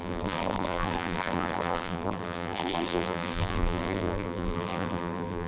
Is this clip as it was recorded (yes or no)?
no